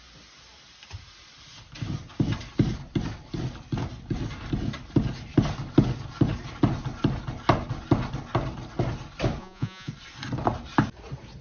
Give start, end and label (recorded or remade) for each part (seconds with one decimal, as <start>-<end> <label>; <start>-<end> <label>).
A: 0.0-9.4 recorded; 9.4-9.9 remade; 9.9-11.4 recorded